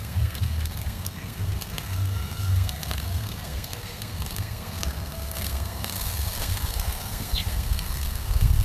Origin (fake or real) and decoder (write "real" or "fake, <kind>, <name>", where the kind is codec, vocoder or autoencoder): fake, codec, SNAC